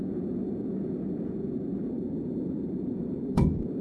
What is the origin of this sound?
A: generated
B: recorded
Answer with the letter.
A